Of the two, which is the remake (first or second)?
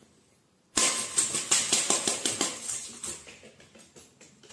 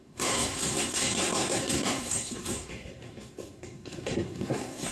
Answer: second